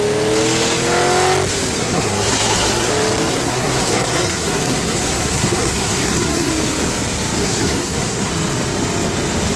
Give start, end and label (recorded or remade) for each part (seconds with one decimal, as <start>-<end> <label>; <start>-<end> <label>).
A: 0.0-1.8 recorded; 1.8-2.9 remade; 2.9-3.3 recorded; 3.3-6.5 remade; 6.5-7.4 recorded; 7.4-8.3 remade; 8.3-9.6 recorded